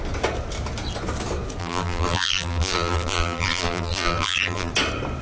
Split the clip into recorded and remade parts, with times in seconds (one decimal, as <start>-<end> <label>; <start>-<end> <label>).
0.0-1.6 recorded; 1.6-4.7 remade; 4.7-5.2 recorded